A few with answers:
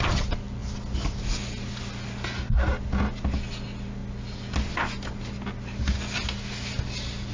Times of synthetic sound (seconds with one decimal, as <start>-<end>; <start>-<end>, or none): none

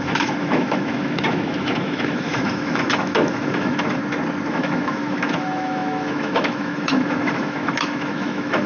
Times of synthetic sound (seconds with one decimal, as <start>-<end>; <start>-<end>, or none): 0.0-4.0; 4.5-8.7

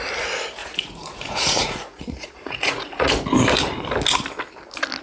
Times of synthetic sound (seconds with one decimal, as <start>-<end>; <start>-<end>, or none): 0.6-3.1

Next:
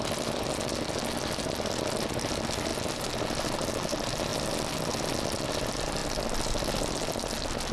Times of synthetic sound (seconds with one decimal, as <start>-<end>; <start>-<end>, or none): none

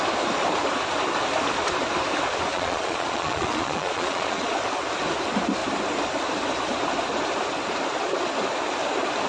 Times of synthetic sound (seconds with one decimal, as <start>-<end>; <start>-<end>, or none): 2.5-4.5